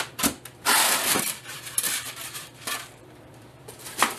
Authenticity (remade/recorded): remade